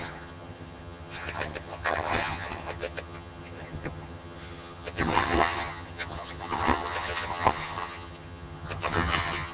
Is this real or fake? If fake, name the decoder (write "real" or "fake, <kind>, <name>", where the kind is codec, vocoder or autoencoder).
fake, vocoder, HiFi-GAN